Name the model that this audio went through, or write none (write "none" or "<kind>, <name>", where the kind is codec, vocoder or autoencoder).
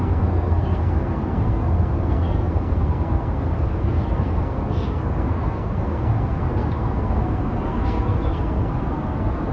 codec, SNAC